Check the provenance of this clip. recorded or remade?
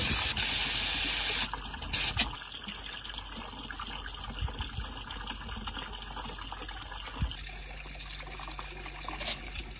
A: recorded